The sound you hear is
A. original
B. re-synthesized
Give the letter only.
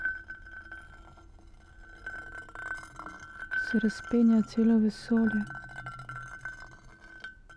A